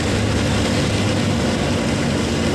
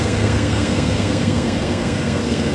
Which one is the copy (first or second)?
second